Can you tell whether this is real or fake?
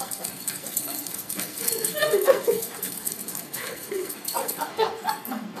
fake